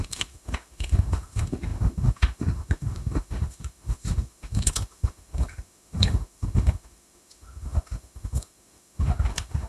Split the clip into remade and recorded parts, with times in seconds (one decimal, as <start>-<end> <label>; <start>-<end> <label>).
0.0-9.7 remade